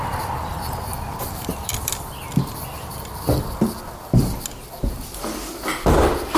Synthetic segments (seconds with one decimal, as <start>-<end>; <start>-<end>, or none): none